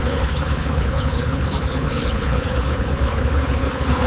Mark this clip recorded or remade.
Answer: remade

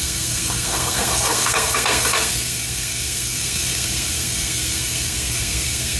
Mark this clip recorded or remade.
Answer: remade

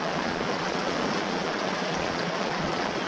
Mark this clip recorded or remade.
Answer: remade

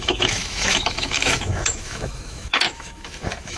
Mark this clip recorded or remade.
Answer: remade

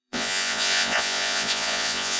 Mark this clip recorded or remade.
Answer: remade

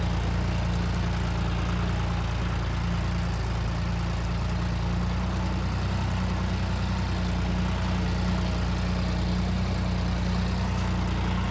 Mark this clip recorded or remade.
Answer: recorded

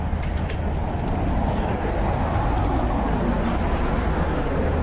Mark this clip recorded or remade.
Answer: recorded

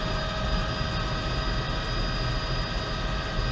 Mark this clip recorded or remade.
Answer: recorded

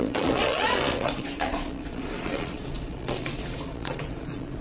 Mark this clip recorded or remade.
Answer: remade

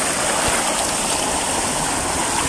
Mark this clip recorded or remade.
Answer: recorded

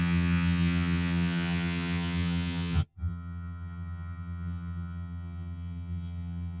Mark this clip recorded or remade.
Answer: remade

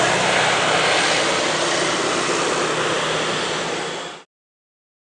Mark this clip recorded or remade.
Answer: recorded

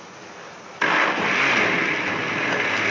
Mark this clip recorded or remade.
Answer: recorded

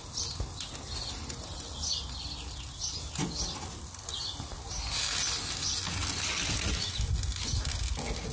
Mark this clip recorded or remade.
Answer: recorded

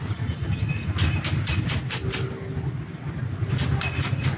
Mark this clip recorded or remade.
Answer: recorded